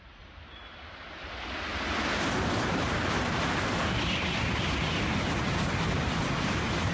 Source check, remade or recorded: recorded